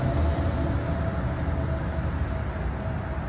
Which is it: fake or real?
real